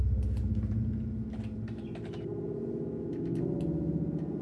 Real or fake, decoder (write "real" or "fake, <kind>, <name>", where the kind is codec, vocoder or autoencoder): real